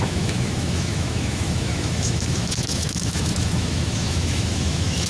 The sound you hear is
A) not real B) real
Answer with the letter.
A